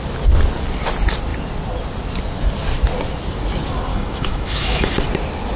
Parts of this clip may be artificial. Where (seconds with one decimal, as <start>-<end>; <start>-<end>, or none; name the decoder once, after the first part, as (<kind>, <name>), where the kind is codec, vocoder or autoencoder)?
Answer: 3.9-4.9 (autoencoder, DAC-VAE)